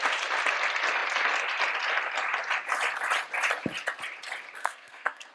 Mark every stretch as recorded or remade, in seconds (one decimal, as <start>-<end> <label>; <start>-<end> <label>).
0.0-4.6 recorded; 4.6-5.3 remade